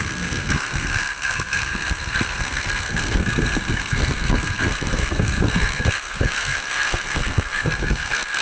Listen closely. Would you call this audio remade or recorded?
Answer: remade